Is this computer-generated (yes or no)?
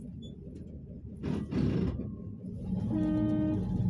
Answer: no